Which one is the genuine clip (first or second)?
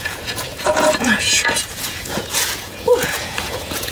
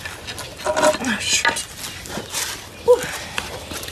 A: second